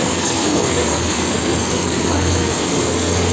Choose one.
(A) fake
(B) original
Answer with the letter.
A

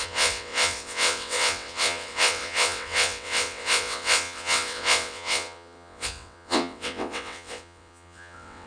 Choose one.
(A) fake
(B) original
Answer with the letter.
A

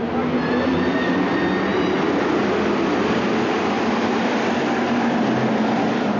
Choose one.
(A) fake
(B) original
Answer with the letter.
B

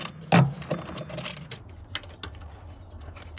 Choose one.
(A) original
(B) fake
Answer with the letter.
A